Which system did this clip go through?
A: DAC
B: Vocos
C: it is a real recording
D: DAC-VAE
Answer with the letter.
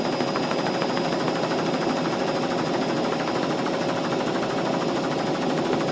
C